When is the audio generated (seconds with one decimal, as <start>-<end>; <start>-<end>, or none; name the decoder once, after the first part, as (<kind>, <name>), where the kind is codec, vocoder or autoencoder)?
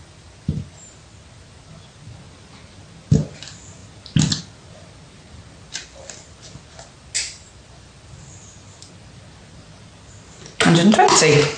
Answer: none